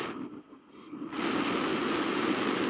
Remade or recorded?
recorded